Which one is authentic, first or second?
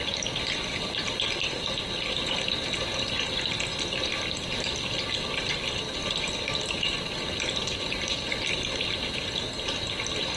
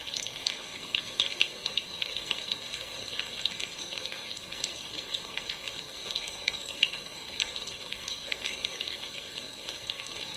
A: first